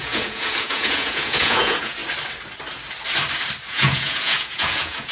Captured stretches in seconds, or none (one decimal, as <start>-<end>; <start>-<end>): 2.0-3.7